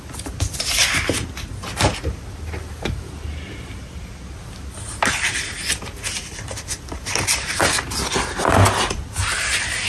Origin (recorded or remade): recorded